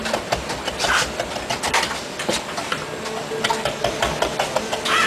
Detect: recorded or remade recorded